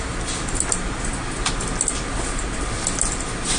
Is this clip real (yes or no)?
yes